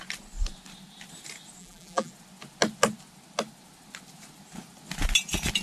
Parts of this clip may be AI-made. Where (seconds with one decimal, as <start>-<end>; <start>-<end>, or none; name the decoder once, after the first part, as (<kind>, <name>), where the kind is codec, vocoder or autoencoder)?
1.6-2.1 (vocoder, BigVGAN v2)